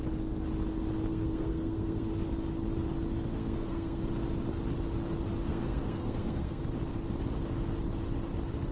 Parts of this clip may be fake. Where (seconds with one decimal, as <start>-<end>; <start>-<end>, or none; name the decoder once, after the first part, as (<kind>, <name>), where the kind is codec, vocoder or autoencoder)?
1.1-2.1 (codec, SNAC); 3.3-4.0; 5.5-6.6